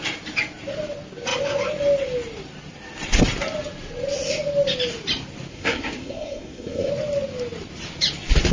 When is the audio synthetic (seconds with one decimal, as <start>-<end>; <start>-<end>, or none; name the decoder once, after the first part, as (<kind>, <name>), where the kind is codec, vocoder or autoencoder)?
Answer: 5.5-6.9 (codec, SNAC)